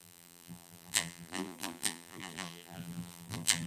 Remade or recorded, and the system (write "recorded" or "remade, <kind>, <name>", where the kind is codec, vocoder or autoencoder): remade, vocoder, BigVGAN v2